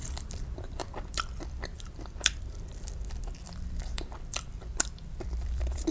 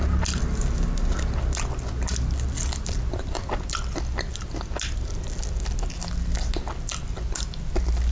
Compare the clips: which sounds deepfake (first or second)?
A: first